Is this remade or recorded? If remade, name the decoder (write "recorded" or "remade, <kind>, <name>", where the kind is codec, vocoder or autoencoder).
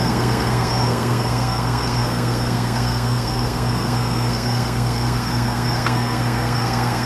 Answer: remade, codec, SNAC